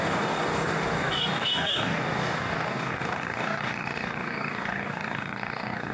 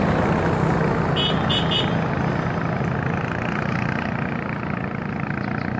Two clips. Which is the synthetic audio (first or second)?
first